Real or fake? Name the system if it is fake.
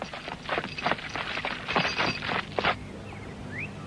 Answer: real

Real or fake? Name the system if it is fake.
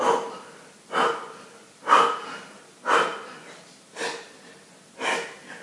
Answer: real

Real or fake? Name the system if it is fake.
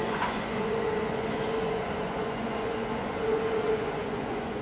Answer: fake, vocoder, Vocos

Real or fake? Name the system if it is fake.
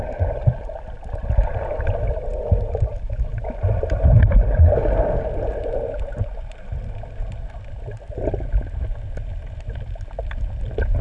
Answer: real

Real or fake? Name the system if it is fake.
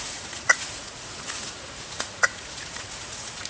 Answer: fake, vocoder, Vocos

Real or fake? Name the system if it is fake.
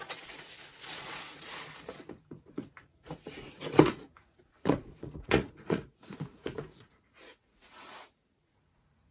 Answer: fake, vocoder, Vocos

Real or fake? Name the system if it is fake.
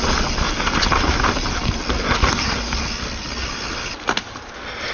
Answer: real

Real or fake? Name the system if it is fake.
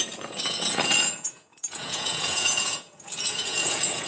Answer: fake, vocoder, Vocos